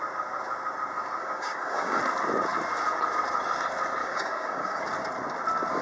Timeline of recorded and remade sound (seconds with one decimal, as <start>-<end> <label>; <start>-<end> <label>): 0.0-1.2 recorded; 1.2-2.0 remade; 2.0-4.0 recorded; 4.0-4.8 remade; 4.8-5.8 recorded